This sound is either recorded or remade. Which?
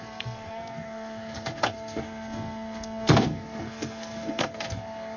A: remade